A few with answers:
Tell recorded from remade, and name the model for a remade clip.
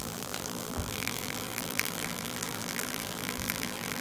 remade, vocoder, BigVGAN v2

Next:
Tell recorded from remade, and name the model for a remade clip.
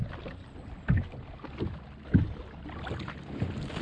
recorded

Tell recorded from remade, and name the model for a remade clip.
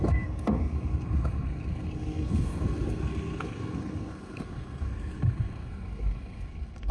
remade, codec, SNAC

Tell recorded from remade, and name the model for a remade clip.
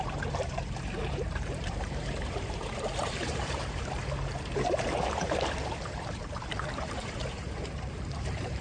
remade, vocoder, BigVGAN v2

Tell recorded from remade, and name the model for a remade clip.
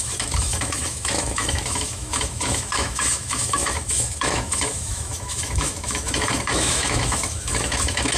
remade, autoencoder, DAC-VAE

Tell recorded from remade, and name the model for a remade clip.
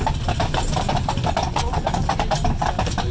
recorded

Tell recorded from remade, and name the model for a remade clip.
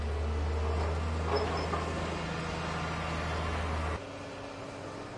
recorded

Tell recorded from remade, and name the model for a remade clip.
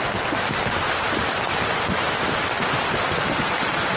recorded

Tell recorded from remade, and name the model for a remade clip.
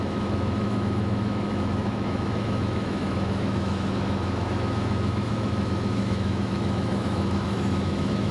remade, autoencoder, DAC-VAE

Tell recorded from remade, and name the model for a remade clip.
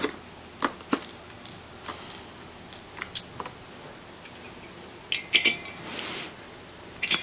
recorded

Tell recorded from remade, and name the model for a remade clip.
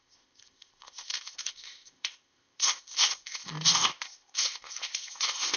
remade, codec, ZipCodec